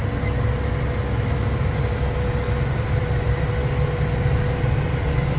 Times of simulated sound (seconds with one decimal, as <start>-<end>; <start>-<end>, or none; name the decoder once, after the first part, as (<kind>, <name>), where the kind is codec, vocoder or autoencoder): none